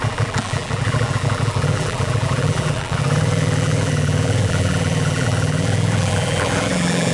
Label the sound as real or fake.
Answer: fake